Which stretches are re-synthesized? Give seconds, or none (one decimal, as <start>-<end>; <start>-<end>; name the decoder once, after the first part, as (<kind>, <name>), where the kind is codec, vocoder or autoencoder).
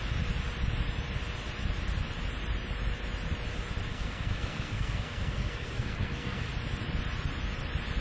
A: 3.9-6.5 (codec, SNAC)